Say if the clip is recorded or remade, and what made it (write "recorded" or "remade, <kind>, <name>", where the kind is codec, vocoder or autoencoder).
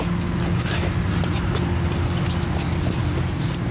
recorded